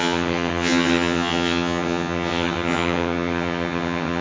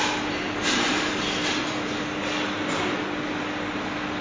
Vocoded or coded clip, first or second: first